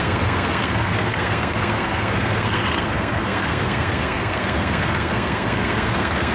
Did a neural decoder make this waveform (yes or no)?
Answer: yes